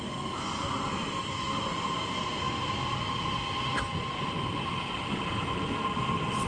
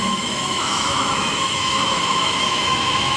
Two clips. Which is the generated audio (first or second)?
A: second